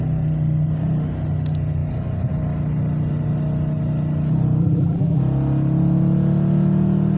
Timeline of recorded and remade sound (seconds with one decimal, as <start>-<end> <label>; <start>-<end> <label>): 0.0-4.6 recorded; 4.6-5.2 remade; 5.2-7.2 recorded